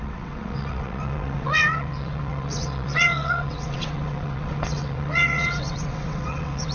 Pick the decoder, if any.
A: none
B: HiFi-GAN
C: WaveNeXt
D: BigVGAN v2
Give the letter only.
C